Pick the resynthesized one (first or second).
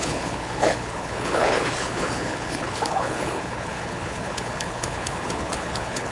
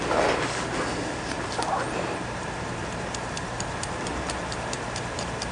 first